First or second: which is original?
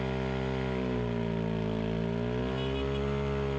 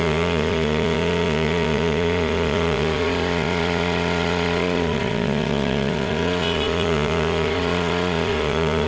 first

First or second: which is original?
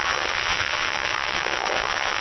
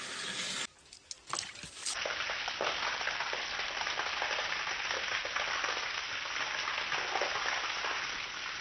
second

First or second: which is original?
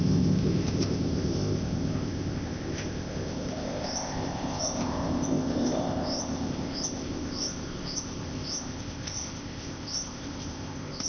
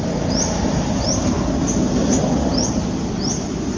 second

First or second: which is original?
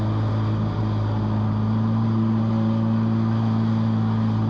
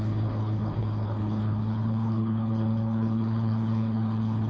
first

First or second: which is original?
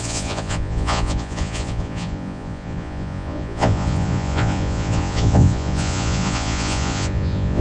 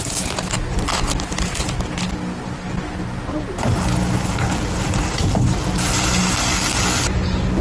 second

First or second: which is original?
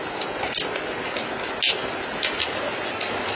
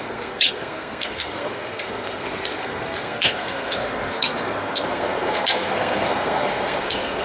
first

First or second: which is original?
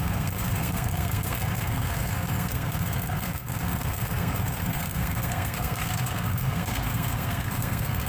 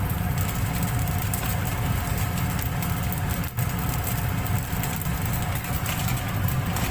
second